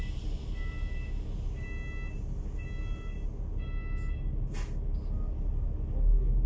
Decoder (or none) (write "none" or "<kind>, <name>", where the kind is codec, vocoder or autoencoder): none